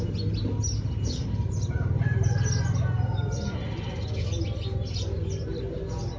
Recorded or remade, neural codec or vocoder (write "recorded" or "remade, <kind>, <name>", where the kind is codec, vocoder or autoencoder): recorded